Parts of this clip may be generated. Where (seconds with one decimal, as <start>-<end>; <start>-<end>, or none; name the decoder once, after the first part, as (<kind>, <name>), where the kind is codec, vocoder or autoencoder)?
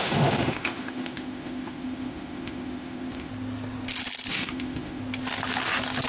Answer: 0.0-3.3 (autoencoder, DAC-VAE); 4.3-5.0